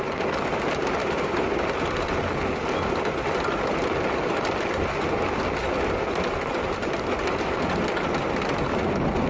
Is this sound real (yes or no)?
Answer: yes